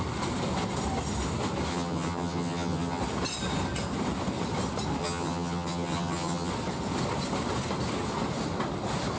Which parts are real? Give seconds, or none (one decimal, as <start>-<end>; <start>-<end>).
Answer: 0.0-1.7; 3.0-5.0; 6.5-9.2